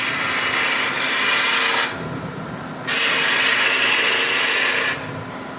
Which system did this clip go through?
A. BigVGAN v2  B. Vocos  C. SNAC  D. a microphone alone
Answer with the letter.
D